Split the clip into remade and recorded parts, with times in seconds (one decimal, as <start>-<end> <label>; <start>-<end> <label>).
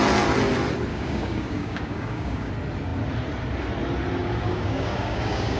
0.0-0.9 recorded; 0.9-2.5 remade; 2.5-4.2 recorded; 4.2-5.6 remade